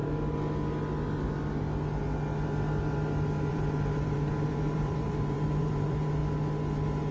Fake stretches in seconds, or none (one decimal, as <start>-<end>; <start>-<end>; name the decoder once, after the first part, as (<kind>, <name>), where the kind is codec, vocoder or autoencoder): 3.5-6.2 (vocoder, BigVGAN v2)